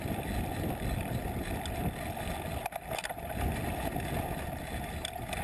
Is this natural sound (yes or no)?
yes